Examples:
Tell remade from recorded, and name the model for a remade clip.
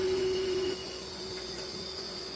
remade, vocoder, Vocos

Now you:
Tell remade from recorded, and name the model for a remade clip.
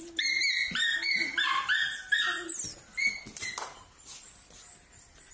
recorded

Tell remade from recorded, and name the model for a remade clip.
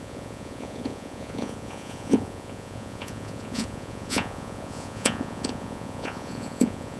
remade, vocoder, Vocos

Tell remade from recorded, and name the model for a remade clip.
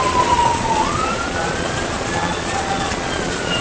remade, vocoder, Vocos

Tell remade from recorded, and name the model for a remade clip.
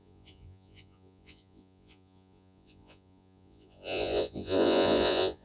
remade, vocoder, Vocos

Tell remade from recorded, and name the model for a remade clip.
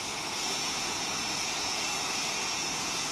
remade, vocoder, Vocos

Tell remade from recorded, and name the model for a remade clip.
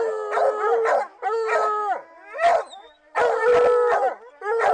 recorded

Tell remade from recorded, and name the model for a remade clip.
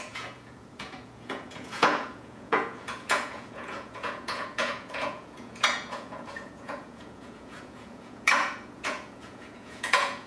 remade, vocoder, Vocos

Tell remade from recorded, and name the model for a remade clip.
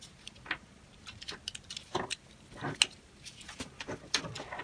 recorded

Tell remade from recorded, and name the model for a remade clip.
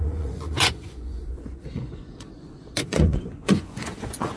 remade, vocoder, Vocos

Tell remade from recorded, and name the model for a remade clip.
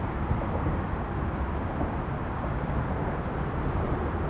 recorded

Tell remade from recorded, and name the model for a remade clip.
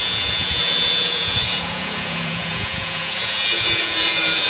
remade, vocoder, Vocos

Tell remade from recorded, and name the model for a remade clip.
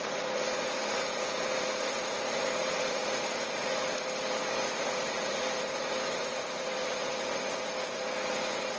remade, vocoder, Vocos